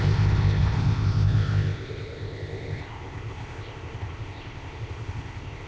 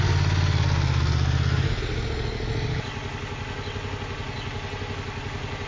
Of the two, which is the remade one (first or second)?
first